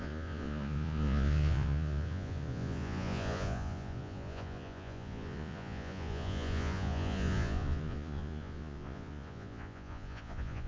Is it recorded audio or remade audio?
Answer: remade